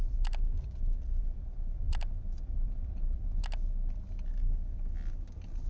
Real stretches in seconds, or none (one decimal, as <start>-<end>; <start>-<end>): 3.4-5.7